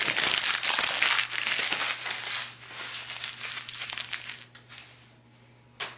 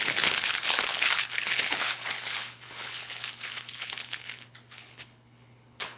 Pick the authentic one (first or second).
first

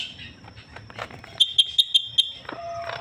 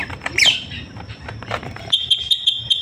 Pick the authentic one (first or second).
first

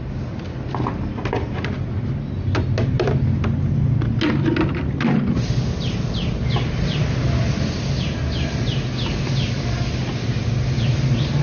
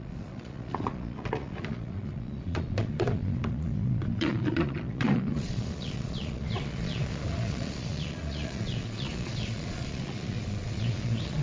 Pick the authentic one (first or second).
first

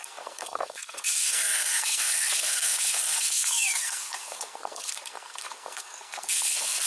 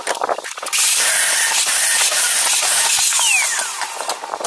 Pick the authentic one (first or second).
second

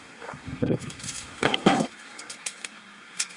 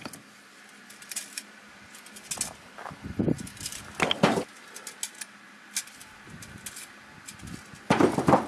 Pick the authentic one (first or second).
second